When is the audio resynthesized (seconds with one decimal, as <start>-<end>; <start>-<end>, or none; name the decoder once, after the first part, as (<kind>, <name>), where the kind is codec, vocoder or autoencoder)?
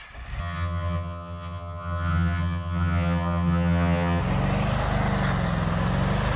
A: 0.4-4.2 (vocoder, HiFi-GAN)